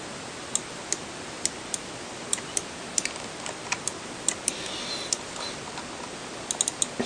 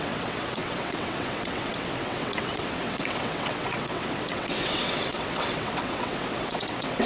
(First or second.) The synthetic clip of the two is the second